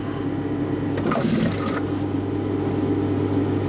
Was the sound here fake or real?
real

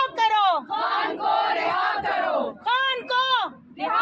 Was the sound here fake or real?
real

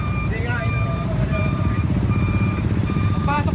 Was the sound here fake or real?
fake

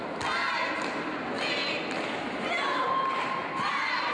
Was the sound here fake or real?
real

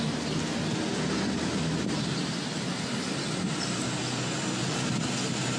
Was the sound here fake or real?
real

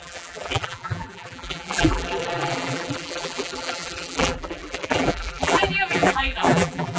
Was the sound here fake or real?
fake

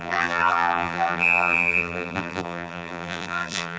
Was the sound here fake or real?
fake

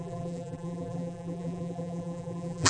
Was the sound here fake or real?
fake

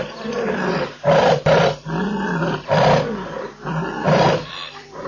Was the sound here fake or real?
fake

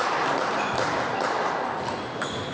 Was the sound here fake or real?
real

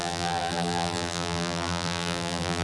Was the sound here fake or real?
fake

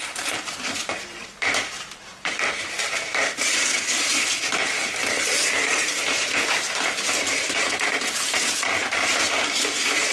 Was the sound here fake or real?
fake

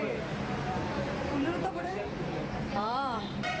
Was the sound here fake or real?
fake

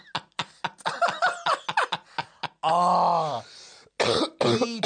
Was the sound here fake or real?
real